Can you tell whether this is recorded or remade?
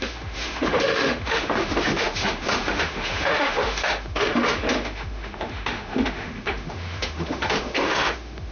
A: remade